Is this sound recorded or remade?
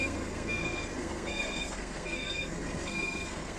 remade